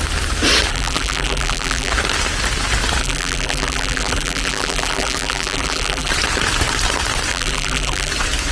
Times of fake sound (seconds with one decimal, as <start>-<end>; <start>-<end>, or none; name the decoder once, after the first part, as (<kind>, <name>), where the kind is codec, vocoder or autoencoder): 0.7-1.9 (vocoder, BigVGAN v2); 3.0-6.1; 7.3-8.1